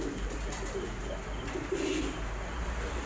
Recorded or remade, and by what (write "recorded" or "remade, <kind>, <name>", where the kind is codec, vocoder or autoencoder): recorded